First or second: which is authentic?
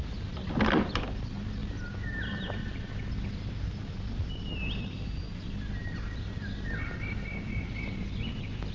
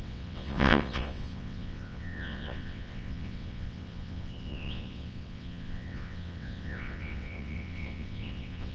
first